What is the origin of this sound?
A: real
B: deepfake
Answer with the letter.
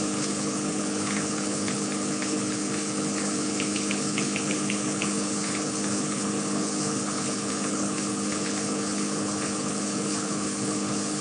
B